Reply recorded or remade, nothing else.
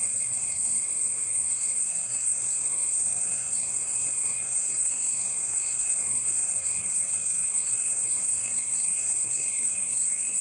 remade